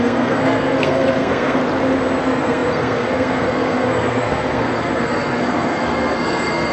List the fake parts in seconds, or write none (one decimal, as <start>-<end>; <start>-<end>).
0.0-1.6; 2.2-6.7